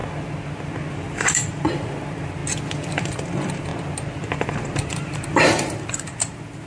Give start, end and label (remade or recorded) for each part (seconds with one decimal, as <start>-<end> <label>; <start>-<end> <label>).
0.0-0.9 recorded; 0.9-2.4 remade; 2.4-3.0 recorded; 3.0-3.7 remade; 3.7-4.5 recorded; 4.5-6.7 remade